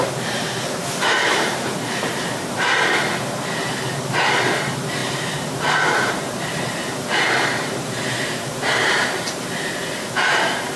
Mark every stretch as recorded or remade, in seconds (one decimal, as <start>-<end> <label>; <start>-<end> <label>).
0.0-10.8 remade